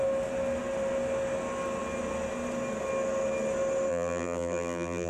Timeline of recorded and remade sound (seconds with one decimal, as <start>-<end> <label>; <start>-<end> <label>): 0.0-3.9 recorded; 3.9-5.1 remade